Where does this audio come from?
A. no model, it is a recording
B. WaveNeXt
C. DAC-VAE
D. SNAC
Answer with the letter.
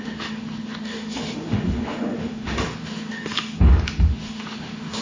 C